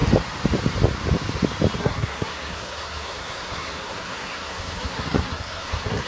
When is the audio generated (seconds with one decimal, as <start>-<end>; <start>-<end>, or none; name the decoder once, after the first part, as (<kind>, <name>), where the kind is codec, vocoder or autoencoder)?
1.8-6.1 (codec, SNAC)